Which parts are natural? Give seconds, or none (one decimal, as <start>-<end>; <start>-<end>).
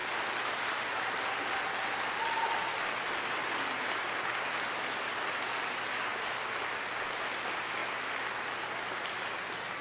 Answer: 0.0-9.8